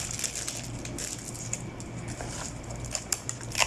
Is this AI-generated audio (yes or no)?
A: no